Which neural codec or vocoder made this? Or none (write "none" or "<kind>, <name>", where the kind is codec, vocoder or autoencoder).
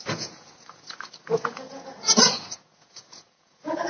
vocoder, Vocos